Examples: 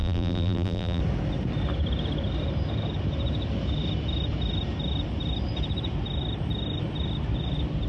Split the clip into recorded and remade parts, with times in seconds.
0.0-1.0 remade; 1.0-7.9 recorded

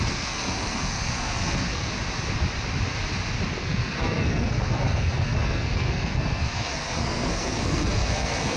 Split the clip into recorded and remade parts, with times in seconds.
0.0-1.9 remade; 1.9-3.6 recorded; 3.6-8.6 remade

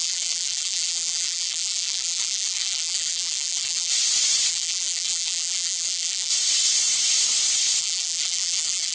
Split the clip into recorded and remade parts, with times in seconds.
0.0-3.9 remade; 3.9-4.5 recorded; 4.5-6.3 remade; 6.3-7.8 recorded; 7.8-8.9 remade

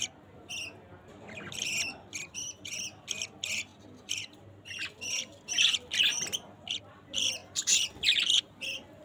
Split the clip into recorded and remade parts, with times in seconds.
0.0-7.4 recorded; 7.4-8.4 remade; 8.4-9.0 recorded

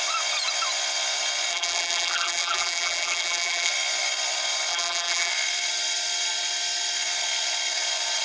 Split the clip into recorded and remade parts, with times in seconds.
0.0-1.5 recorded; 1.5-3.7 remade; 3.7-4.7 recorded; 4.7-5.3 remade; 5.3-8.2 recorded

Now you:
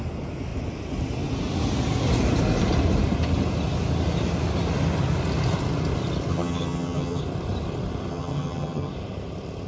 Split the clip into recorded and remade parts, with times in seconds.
0.0-6.3 recorded; 6.3-7.2 remade; 7.2-8.1 recorded; 8.1-8.9 remade; 8.9-9.7 recorded